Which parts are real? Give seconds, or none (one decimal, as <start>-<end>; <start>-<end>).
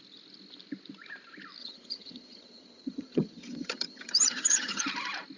0.0-1.6; 4.8-5.4